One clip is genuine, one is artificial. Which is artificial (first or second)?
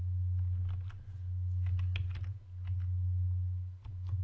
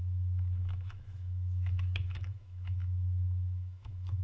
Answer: second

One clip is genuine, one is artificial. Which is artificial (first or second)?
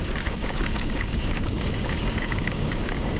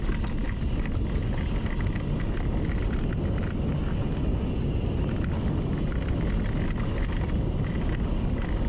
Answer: first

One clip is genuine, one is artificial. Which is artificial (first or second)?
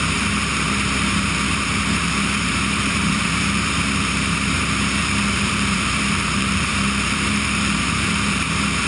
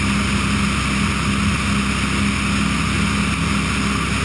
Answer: first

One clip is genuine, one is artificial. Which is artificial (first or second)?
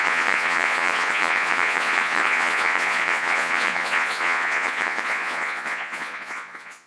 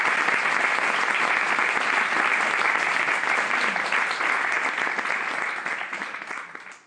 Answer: first